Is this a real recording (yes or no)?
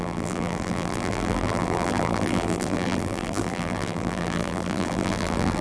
no